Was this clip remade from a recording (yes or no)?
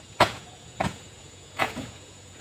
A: yes